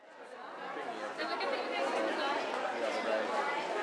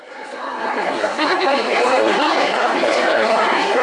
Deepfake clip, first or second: second